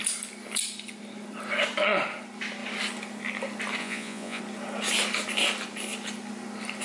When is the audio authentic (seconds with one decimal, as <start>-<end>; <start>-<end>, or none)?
0.0-3.8; 4.4-6.8